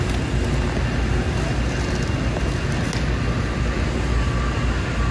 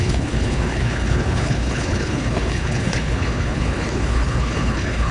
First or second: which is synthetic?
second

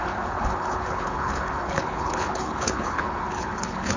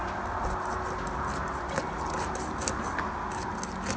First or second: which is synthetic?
first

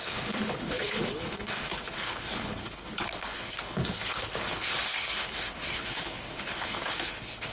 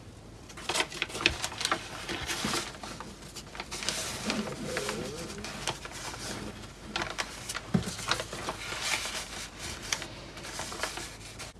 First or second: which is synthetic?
first